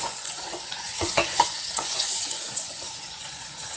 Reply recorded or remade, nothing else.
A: remade